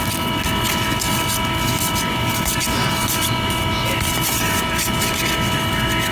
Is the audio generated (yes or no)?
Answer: no